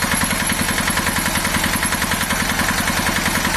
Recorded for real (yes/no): yes